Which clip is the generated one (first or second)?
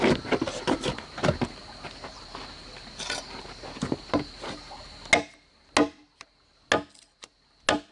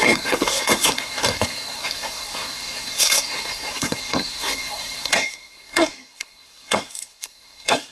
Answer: second